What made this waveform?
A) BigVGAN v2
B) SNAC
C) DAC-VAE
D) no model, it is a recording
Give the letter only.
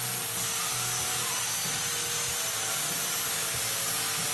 D